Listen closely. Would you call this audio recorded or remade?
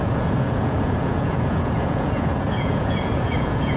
remade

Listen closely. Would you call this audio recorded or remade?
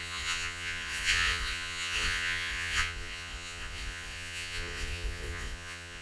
remade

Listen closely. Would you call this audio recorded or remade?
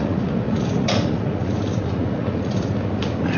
remade